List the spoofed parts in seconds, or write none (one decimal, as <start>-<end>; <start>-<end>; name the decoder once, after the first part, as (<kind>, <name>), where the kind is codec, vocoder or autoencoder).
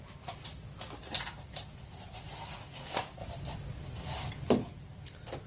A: 3.2-4.5 (vocoder, BigVGAN v2)